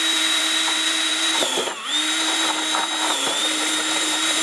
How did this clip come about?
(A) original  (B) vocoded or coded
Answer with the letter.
B